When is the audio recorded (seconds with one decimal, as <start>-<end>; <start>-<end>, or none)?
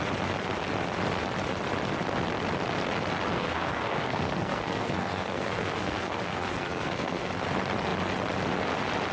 0.0-3.3; 7.3-9.1